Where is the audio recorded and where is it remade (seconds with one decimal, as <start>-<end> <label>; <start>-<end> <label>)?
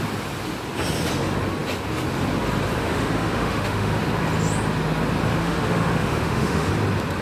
0.0-2.8 recorded; 2.8-4.0 remade; 4.0-5.4 recorded; 5.4-6.7 remade; 6.7-7.2 recorded